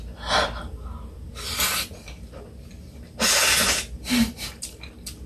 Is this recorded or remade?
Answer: recorded